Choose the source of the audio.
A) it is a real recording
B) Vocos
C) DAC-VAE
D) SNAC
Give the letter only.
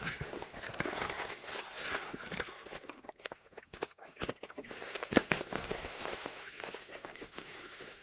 D